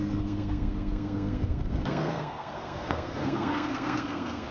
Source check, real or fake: fake